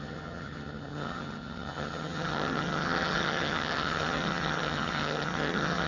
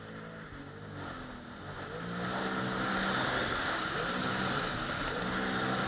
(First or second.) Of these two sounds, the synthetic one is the first